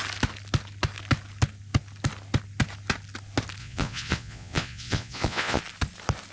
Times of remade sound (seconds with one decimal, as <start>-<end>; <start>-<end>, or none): 3.6-5.6